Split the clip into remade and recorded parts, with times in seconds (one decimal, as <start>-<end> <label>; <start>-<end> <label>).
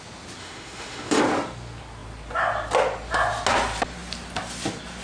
0.0-0.4 recorded; 0.4-1.2 remade; 1.2-5.0 recorded